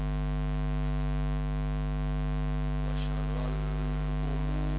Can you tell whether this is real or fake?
real